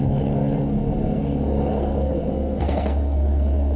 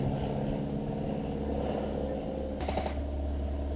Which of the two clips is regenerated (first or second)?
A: first